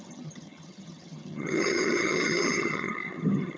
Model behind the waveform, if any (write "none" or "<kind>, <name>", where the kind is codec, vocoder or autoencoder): vocoder, HiFi-GAN